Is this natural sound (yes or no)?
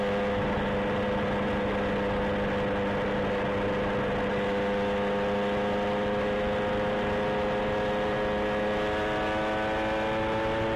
yes